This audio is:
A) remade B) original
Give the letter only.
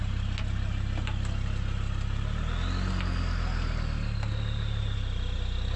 B